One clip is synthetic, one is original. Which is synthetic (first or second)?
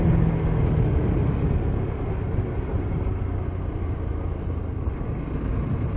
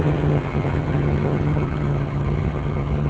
second